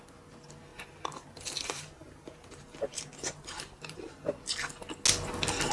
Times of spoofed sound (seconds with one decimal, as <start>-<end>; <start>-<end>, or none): 0.7-4.1